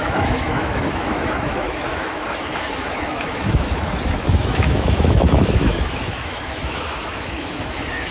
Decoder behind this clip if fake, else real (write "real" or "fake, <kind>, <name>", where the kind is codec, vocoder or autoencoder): fake, autoencoder, DAC-VAE